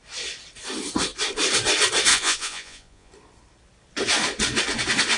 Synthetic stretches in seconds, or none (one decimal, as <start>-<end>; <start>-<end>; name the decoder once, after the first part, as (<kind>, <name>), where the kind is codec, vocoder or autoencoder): 2.1-3.1 (vocoder, Vocos)